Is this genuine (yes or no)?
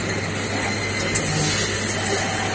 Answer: yes